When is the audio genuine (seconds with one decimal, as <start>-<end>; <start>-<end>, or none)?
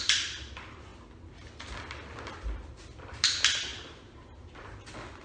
0.0-5.2